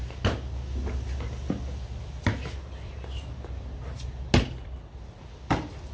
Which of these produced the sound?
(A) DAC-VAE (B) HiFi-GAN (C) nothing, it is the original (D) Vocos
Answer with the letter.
C